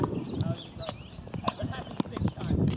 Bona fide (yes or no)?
yes